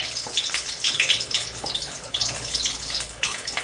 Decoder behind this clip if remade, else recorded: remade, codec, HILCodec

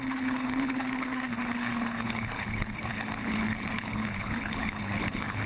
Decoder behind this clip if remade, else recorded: remade, codec, HILCodec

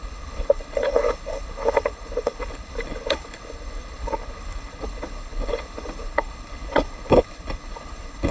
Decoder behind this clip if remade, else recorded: remade, codec, HILCodec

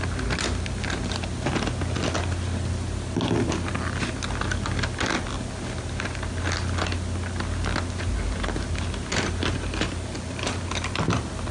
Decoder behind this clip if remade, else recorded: recorded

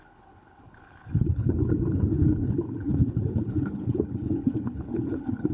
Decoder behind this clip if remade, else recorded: remade, codec, HILCodec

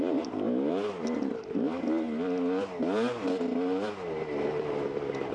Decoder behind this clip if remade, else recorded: recorded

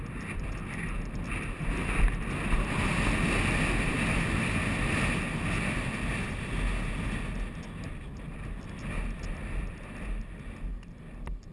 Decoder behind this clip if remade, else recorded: recorded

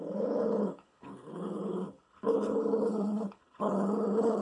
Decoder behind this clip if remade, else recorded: remade, codec, HILCodec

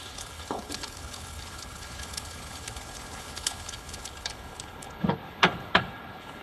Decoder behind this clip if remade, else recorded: remade, codec, HILCodec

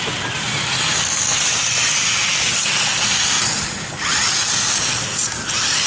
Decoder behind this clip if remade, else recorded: recorded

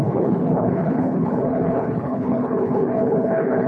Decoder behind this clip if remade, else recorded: remade, codec, HILCodec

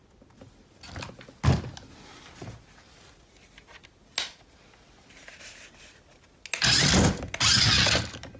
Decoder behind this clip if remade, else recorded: recorded